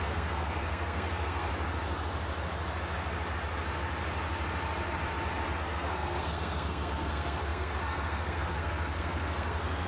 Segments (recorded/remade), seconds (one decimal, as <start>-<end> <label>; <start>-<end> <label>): 0.0-1.5 remade; 1.5-5.6 recorded; 5.6-9.9 remade